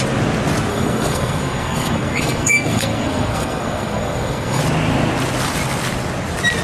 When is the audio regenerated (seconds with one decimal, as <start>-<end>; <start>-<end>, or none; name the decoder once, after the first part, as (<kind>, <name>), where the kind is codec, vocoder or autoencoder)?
0.7-4.6 (codec, SNAC)